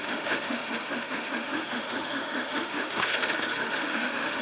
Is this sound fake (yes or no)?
yes